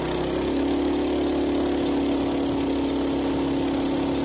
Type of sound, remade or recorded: recorded